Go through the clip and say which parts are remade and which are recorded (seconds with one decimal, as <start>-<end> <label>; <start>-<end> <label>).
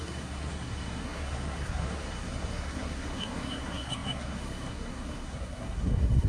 0.0-6.3 remade